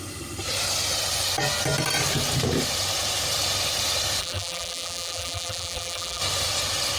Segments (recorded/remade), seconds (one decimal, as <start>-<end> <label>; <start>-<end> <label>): 0.0-4.2 recorded; 4.2-6.2 remade; 6.2-7.0 recorded